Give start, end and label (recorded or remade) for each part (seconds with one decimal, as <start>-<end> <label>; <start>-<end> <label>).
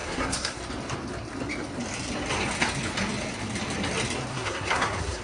0.0-0.6 remade; 0.6-4.3 recorded; 4.3-5.2 remade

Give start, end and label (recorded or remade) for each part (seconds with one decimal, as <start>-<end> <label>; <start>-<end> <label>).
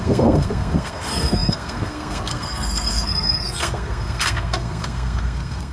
0.0-5.7 remade